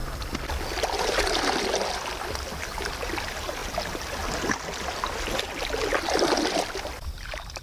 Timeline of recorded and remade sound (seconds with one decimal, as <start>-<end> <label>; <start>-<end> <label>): 0.0-7.6 recorded